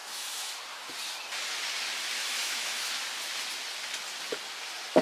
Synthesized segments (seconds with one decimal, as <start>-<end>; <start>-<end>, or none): 0.0-0.6; 2.2-2.8